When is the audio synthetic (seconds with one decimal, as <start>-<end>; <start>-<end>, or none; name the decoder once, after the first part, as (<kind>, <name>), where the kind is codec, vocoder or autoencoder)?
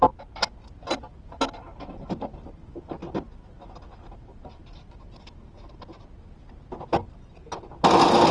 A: none